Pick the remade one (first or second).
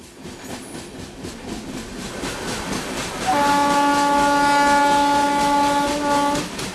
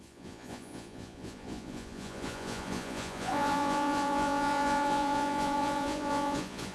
second